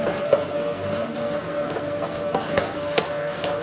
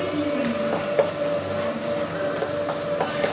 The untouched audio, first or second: second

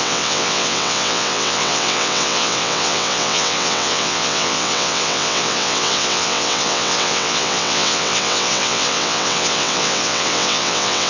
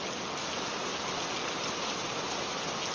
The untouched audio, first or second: second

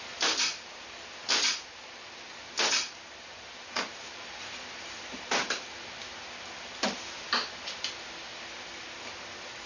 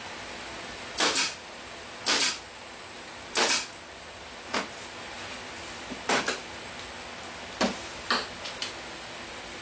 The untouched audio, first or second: second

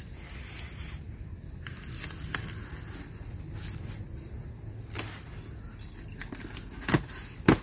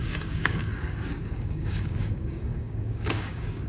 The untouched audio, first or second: first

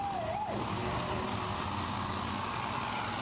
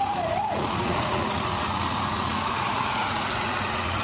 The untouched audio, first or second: first